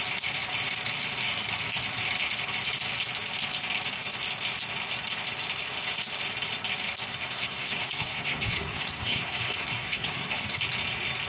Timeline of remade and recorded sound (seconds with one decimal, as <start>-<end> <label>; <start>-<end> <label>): 0.0-7.1 recorded; 7.1-10.6 remade; 10.6-11.3 recorded